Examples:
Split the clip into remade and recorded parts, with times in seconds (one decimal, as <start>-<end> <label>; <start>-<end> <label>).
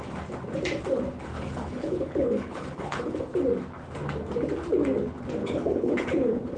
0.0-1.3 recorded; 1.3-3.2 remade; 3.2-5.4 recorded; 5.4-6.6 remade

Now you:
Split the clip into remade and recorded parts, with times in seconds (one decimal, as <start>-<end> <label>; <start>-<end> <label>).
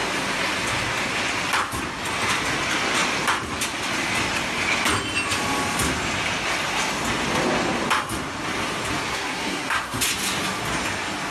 0.0-9.1 recorded; 9.1-10.0 remade; 10.0-11.3 recorded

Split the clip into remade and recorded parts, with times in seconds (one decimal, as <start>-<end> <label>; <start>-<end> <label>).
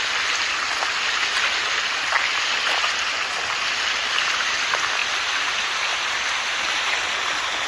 0.0-7.7 recorded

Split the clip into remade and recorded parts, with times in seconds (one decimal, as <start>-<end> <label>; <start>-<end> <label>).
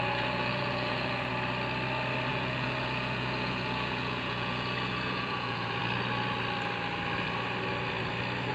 0.0-1.3 remade; 1.3-2.3 recorded; 2.3-5.8 remade; 5.8-8.5 recorded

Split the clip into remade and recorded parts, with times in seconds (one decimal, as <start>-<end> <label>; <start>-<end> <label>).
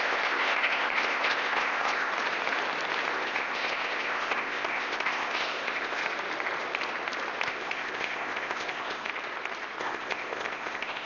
0.0-2.1 remade; 2.1-3.1 recorded; 3.1-6.0 remade; 6.0-7.5 recorded; 7.5-9.1 remade; 9.1-9.8 recorded; 9.8-11.1 remade